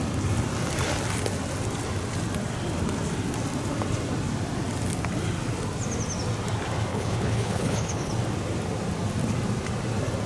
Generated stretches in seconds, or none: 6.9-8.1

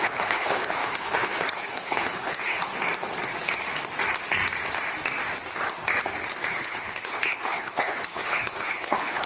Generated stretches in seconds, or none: 0.0-2.7; 6.5-9.3

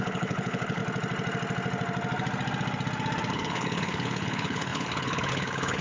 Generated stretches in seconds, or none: 0.0-0.8; 3.3-5.8

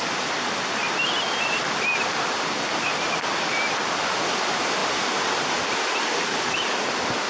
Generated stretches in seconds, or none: none

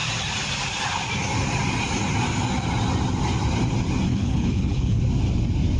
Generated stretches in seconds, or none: 4.1-5.0

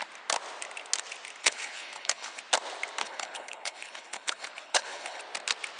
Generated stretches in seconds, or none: 1.4-2.4; 3.0-5.2

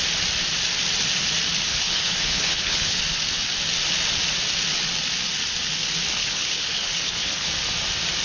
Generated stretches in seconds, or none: 1.7-3.0; 6.2-7.5

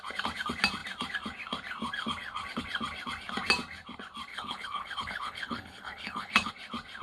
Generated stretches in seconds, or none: 4.3-6.5